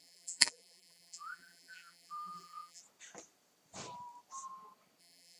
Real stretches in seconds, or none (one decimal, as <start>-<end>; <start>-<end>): 2.8-5.0